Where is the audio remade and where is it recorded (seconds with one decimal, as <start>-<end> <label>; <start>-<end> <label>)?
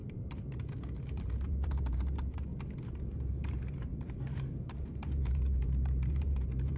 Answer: 0.0-2.5 remade; 2.5-3.0 recorded; 3.0-6.8 remade